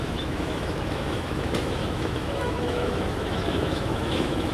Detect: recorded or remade remade